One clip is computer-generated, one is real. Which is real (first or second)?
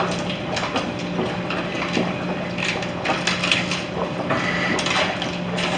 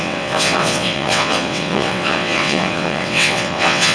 first